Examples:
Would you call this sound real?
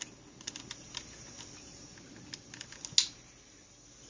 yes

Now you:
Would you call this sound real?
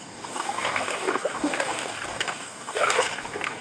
no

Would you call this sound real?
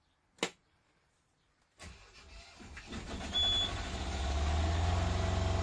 yes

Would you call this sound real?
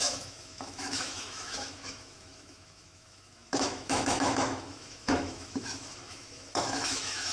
no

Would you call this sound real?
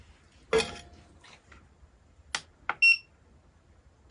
yes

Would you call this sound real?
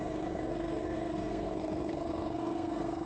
no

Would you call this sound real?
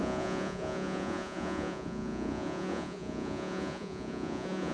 no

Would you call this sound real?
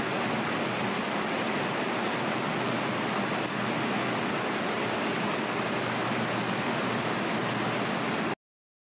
yes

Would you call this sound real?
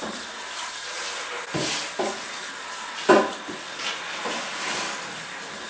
yes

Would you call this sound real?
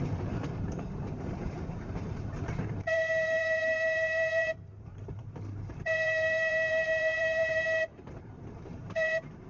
no